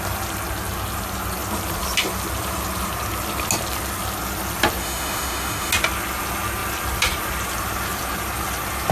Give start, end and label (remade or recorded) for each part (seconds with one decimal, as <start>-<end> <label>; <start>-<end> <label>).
0.0-4.8 recorded; 4.8-5.7 remade; 5.7-8.9 recorded